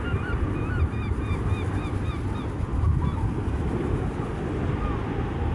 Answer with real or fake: real